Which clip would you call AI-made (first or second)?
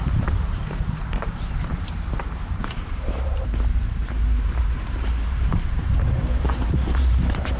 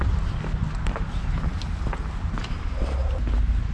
first